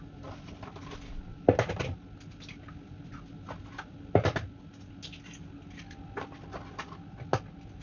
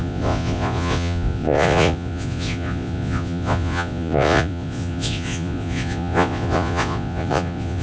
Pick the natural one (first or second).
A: first